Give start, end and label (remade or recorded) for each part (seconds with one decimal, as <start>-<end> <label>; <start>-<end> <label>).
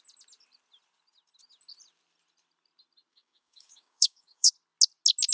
0.0-3.1 recorded; 3.1-4.5 remade; 4.5-5.3 recorded